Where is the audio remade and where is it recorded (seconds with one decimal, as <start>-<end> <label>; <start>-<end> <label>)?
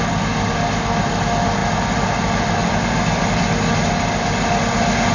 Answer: 0.0-5.1 recorded